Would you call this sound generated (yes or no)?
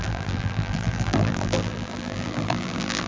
yes